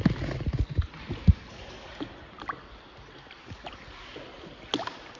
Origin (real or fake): real